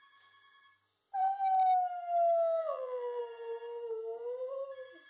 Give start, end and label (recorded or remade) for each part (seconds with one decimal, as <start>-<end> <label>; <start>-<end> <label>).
0.0-2.6 recorded; 2.6-3.2 remade; 3.2-5.1 recorded